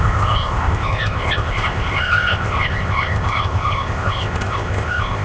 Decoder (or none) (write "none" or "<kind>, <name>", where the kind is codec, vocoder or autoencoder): codec, ZipCodec